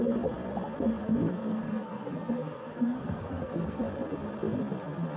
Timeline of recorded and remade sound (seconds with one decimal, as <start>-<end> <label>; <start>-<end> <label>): 0.0-1.3 recorded; 1.3-3.8 remade; 3.8-5.2 recorded